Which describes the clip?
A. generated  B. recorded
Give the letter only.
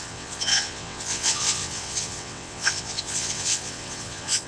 A